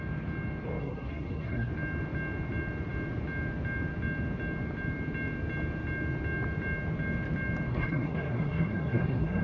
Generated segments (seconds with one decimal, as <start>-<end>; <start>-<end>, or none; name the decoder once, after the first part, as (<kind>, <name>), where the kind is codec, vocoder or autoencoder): 0.8-1.7 (codec, SNAC); 7.7-9.4